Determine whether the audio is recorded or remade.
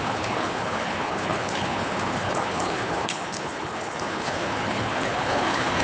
remade